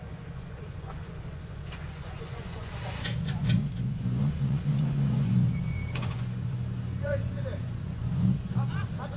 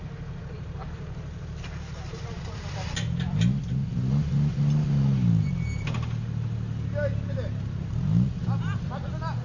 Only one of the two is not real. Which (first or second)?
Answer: first